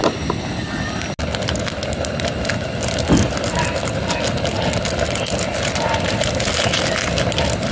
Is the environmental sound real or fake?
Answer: real